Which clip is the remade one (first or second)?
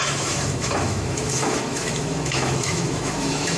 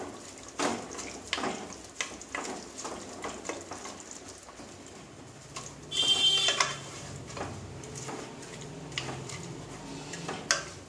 first